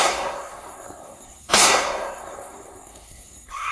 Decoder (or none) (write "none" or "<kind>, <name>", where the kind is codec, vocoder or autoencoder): codec, SNAC